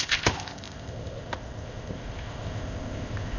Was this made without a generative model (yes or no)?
no